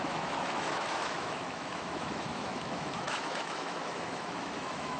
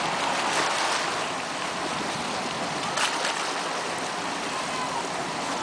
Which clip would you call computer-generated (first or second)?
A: first